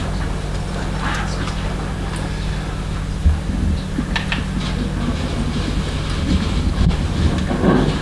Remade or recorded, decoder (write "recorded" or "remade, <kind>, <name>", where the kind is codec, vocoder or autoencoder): recorded